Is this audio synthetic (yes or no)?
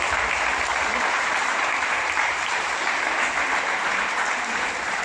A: yes